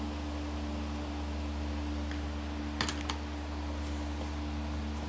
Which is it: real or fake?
real